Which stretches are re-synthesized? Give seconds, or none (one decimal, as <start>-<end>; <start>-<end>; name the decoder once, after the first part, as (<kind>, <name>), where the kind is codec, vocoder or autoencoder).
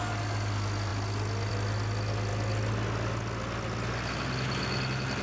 none